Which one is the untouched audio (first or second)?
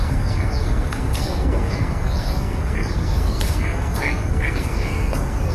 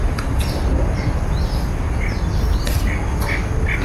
second